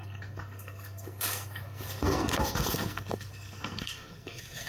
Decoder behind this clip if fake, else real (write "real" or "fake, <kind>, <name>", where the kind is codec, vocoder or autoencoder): fake, codec, SNAC